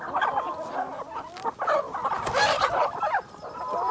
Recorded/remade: recorded